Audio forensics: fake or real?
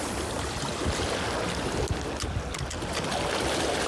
real